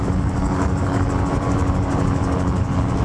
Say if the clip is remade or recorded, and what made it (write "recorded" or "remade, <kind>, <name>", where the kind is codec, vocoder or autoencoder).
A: remade, codec, DAC